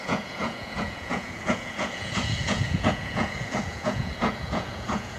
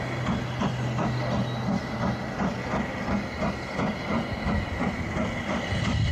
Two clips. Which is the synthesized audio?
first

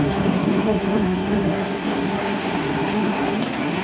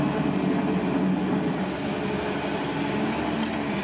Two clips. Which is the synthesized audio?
first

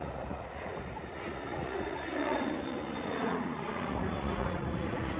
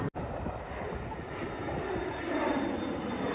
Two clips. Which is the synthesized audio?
first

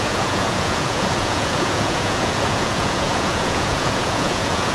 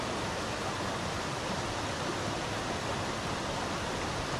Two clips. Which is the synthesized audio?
first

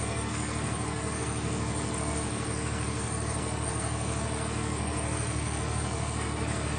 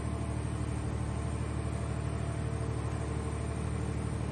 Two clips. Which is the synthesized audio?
first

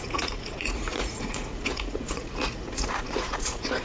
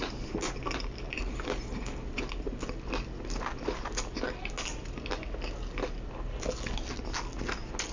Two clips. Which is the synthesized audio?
first